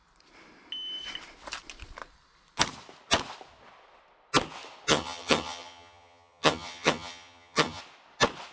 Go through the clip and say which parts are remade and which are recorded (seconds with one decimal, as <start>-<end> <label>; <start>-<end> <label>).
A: 0.0-4.9 recorded; 4.9-7.8 remade; 7.8-8.5 recorded